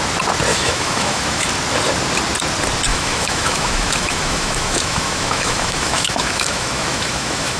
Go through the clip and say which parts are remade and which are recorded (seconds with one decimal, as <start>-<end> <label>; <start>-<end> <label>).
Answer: 0.0-0.5 recorded; 0.5-1.5 remade; 1.5-2.9 recorded; 2.9-7.6 remade